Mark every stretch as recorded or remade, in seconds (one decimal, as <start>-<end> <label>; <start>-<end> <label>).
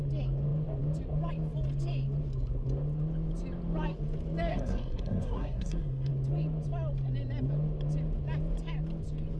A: 0.0-4.5 recorded; 4.5-6.1 remade; 6.1-9.4 recorded